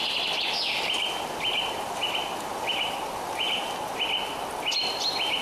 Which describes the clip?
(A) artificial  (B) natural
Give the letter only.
B